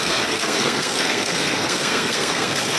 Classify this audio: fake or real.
fake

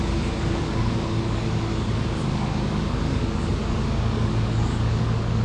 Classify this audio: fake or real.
fake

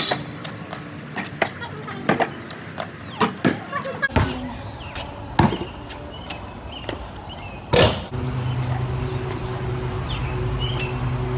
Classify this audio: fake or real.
real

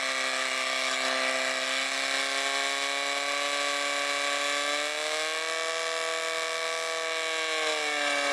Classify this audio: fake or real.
real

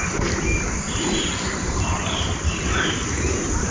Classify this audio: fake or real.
real